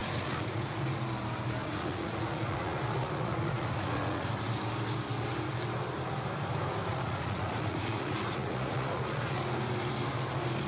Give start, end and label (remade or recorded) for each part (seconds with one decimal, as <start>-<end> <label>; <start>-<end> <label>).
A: 0.0-1.0 remade; 1.0-1.6 recorded; 1.6-4.3 remade; 4.3-6.9 recorded; 6.9-9.4 remade; 9.4-10.7 recorded